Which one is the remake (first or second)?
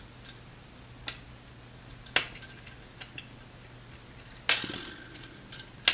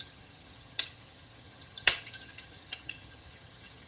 second